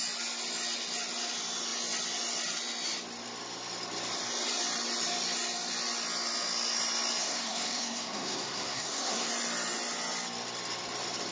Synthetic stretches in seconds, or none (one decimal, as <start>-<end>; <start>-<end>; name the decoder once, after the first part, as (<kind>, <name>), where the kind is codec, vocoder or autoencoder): 7.2-9.3 (codec, SNAC)